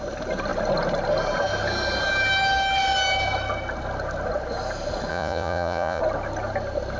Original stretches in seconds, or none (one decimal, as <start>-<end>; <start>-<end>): 0.0-5.1; 6.0-7.0